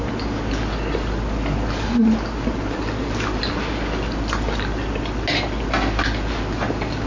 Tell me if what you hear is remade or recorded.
recorded